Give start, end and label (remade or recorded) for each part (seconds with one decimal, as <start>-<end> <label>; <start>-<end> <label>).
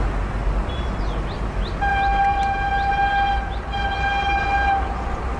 0.0-0.4 recorded; 0.4-1.5 remade; 1.5-1.9 recorded; 1.9-2.9 remade; 2.9-5.4 recorded